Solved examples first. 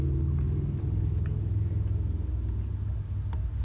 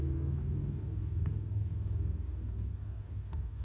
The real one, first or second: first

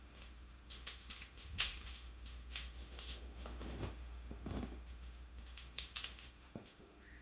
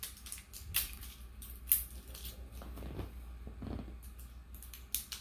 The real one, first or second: second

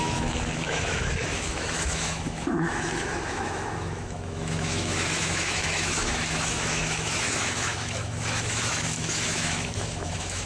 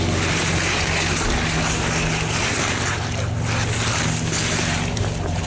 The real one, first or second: second